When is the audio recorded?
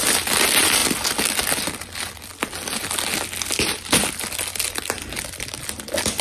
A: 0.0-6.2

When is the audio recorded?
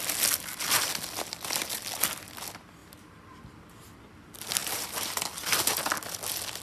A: 0.0-2.8; 3.4-4.6; 5.2-6.6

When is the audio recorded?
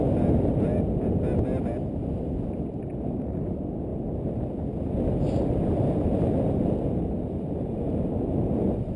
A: 0.0-3.9; 6.9-9.0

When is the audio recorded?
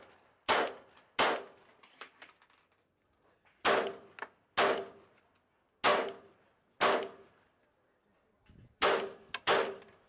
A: 0.0-10.1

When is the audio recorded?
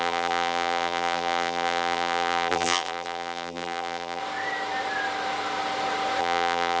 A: 4.2-6.2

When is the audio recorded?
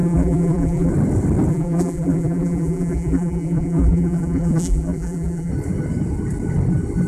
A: 0.9-1.5; 5.5-7.1